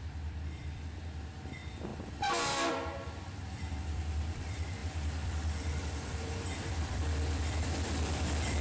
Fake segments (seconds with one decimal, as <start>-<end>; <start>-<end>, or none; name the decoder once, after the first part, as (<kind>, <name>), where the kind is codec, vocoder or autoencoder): 0.0-8.6 (vocoder, BigVGAN v2)